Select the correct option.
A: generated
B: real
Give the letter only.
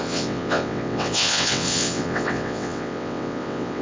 A